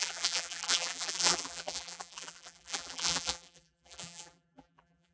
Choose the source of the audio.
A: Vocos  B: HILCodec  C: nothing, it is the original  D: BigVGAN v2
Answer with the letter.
D